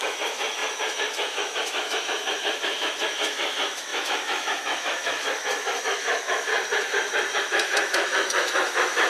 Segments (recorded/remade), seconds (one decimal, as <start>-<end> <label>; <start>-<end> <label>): 0.0-6.5 remade; 6.5-7.4 recorded; 7.4-9.1 remade